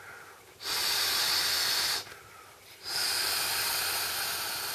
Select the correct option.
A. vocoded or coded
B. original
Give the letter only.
B